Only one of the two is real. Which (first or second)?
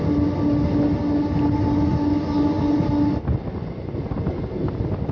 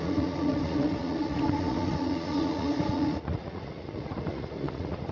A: first